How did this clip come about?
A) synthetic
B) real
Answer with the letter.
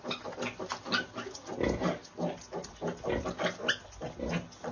B